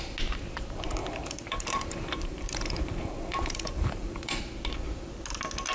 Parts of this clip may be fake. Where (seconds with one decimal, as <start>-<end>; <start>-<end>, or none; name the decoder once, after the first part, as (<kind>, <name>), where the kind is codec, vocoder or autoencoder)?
1.0-4.4 (vocoder, BigVGAN v2)